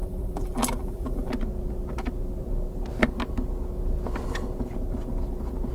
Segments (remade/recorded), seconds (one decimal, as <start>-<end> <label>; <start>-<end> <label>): 0.0-1.3 remade; 1.3-5.7 recorded